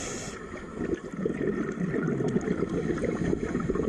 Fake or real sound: real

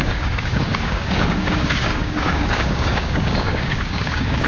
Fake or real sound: fake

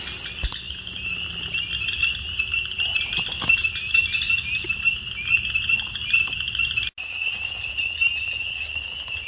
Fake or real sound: real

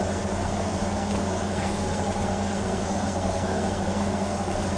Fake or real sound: fake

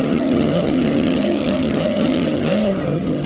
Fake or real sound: fake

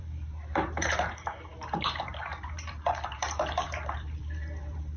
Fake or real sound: fake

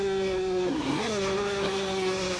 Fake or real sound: fake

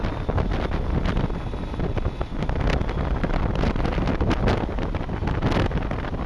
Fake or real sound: real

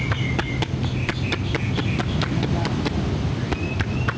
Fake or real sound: real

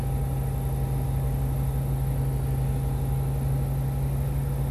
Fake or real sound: real